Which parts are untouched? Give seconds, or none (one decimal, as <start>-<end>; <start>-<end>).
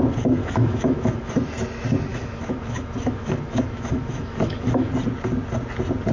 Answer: 0.0-0.4; 1.3-2.1; 4.9-6.1